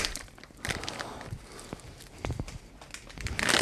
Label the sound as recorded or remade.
recorded